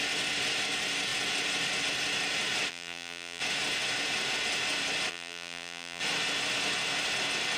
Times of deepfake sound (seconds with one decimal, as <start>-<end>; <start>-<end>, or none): 2.7-3.4; 5.1-6.0